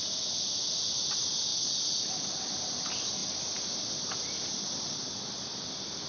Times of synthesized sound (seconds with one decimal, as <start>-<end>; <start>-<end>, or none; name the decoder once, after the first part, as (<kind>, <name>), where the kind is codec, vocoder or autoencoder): none